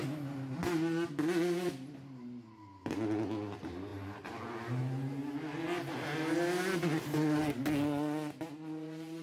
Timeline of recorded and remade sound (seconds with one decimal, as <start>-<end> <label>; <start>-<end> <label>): 0.0-9.2 recorded